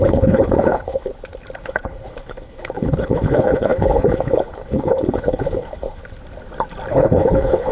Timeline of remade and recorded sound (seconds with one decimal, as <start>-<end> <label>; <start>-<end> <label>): 0.0-1.1 remade; 1.1-1.6 recorded; 1.6-6.0 remade; 6.0-6.9 recorded; 6.9-7.7 remade